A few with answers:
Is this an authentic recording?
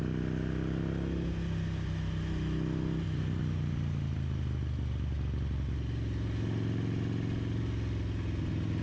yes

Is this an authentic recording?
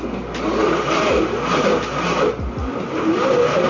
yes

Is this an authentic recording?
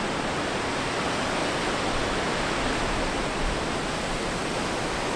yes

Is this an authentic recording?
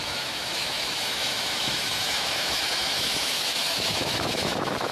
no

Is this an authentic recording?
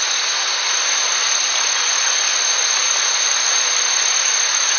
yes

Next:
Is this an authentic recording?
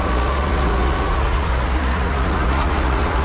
no